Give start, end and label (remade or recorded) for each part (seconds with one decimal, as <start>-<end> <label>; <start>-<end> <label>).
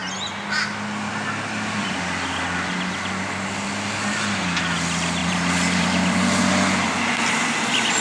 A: 0.0-5.2 recorded; 5.2-6.9 remade; 6.9-8.0 recorded